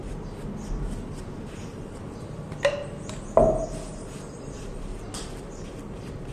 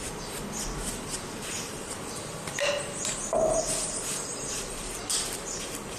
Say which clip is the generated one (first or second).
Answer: second